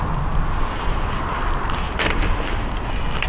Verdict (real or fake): real